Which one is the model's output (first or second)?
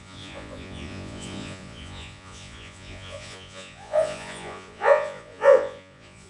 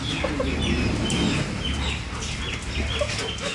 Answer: first